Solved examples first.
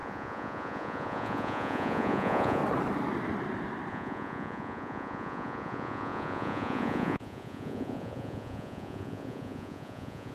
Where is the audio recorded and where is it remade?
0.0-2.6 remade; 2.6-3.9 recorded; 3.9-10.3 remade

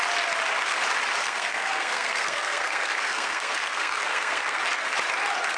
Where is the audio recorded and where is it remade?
0.0-1.2 recorded; 1.2-4.6 remade; 4.6-5.6 recorded

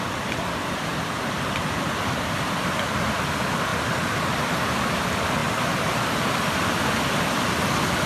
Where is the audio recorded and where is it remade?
0.0-8.1 recorded

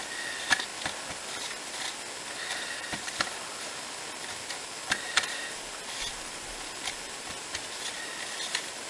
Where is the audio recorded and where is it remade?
0.0-8.9 recorded